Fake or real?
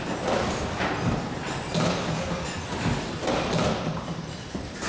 real